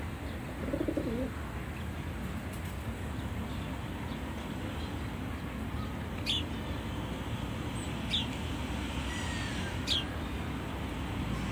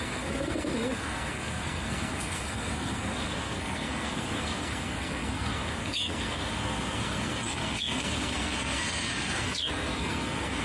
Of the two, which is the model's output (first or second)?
second